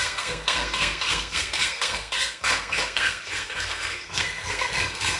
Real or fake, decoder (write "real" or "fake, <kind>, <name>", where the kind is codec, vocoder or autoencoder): fake, codec, SNAC